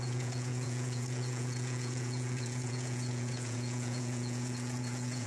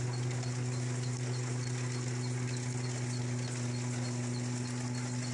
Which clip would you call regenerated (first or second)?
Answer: first